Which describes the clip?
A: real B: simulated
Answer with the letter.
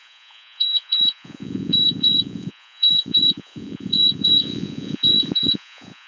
B